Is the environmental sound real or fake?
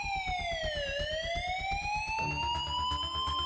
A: real